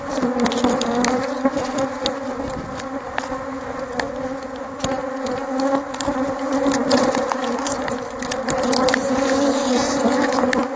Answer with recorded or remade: recorded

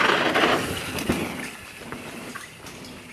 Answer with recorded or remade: recorded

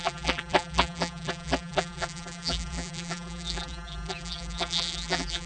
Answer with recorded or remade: remade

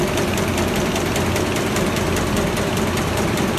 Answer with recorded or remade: recorded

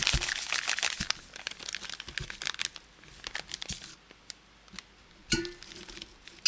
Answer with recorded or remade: recorded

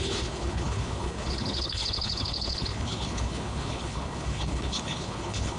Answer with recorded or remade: remade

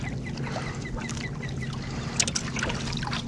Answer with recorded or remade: recorded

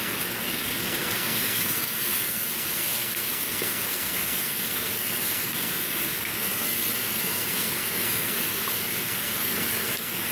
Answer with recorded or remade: remade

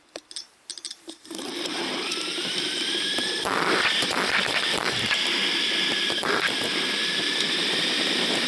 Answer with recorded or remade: remade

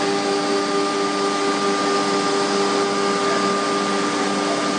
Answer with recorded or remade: recorded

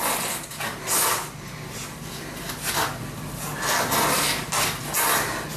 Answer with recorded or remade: recorded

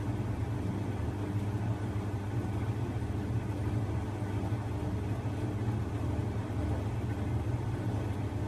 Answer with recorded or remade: recorded